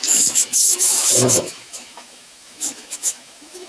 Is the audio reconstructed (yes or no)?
yes